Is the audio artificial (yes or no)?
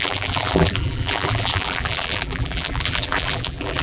yes